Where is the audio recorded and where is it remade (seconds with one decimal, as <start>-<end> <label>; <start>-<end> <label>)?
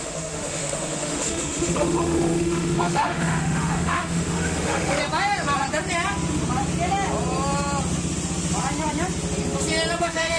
0.0-5.0 remade; 5.0-10.0 recorded; 10.0-10.4 remade